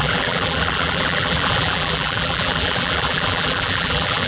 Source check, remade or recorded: remade